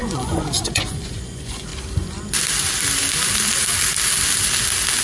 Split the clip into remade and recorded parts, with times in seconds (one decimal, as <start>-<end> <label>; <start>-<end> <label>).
0.0-1.7 remade; 1.7-5.0 recorded